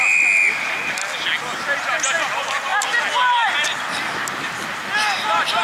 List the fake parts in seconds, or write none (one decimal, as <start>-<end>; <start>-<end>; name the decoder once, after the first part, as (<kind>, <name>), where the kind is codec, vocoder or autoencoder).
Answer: none